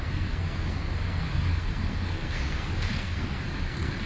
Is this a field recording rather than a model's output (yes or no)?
no